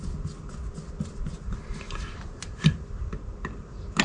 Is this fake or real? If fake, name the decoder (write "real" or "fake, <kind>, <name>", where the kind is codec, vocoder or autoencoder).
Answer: real